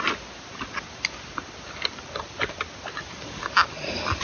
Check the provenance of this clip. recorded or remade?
recorded